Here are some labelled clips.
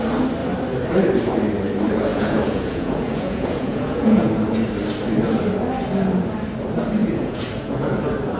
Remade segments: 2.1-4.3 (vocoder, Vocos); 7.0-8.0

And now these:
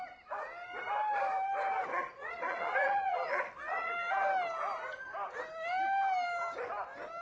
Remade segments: 1.9-3.9 (vocoder, Vocos)

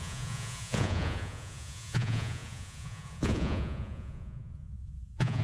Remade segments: 0.0-5.4 (vocoder, Vocos)